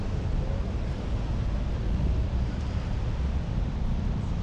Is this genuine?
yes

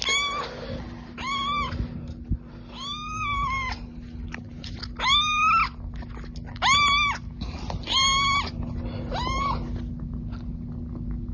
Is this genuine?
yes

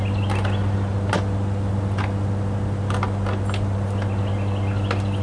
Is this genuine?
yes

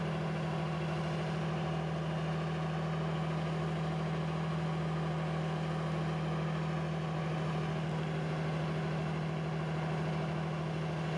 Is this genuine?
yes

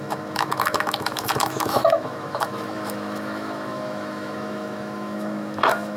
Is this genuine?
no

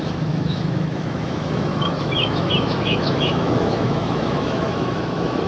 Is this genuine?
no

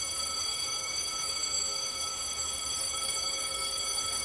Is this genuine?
no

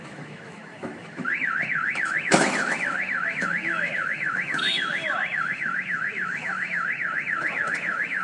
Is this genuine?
no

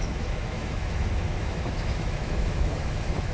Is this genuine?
no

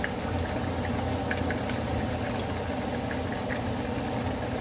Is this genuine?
yes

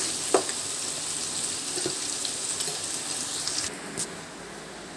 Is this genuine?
yes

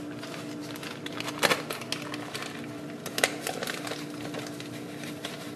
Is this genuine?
yes